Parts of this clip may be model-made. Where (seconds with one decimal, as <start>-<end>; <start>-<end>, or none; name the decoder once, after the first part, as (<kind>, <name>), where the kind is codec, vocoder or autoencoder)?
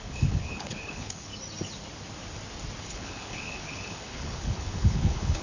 0.0-1.3 (codec, HILCodec); 2.8-5.4